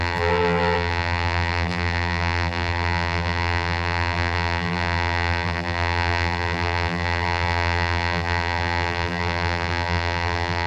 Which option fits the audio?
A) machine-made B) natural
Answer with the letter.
A